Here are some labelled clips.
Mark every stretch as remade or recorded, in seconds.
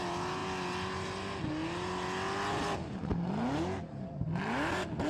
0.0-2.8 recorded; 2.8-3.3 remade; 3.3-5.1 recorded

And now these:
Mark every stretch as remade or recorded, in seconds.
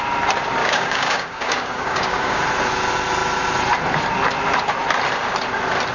0.0-0.6 recorded; 0.6-2.4 remade; 2.4-5.9 recorded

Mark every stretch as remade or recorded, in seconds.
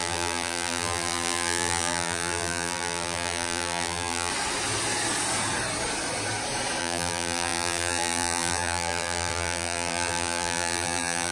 0.0-4.3 remade; 4.3-6.8 recorded; 6.8-11.3 remade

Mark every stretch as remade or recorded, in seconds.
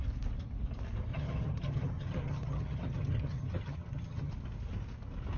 0.0-1.1 recorded; 1.1-4.3 remade; 4.3-5.4 recorded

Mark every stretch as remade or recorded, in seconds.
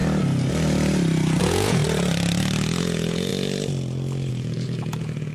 0.0-1.4 recorded; 1.4-1.8 remade; 1.8-2.8 recorded; 2.8-3.3 remade; 3.3-4.3 recorded; 4.3-5.3 remade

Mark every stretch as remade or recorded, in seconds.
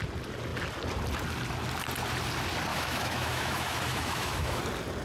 0.0-2.7 recorded; 2.7-4.6 remade; 4.6-5.0 recorded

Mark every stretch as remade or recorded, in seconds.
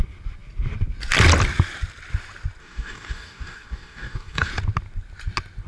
0.0-2.6 recorded; 2.6-4.5 remade; 4.5-5.7 recorded